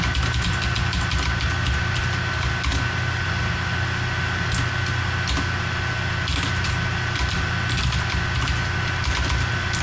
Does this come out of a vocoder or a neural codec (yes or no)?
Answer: no